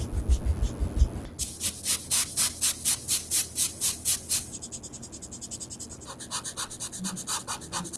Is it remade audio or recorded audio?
recorded